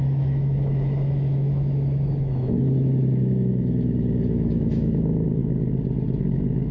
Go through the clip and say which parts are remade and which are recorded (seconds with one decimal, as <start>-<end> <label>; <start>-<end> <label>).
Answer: 0.0-5.4 remade; 5.4-6.2 recorded; 6.2-6.7 remade